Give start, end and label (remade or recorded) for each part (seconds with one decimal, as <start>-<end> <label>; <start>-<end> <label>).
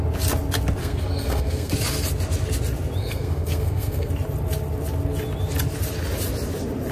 0.0-0.8 recorded; 0.8-1.7 remade; 1.7-3.0 recorded; 3.0-4.1 remade; 4.1-6.9 recorded